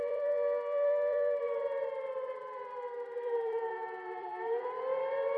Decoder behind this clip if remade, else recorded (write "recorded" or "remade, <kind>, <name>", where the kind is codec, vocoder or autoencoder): remade, vocoder, BigVGAN v2